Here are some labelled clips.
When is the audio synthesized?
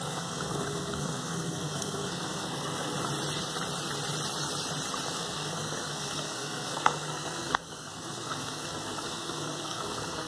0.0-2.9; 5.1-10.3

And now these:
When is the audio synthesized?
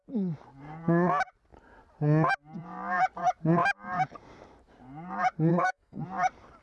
5.5-6.0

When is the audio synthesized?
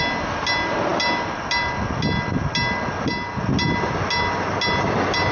none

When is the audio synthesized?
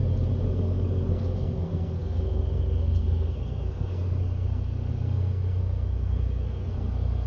0.5-7.3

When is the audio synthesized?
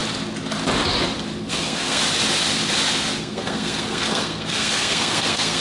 1.4-2.0; 3.2-5.6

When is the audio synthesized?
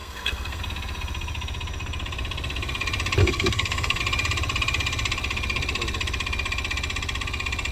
0.0-0.6; 3.2-4.0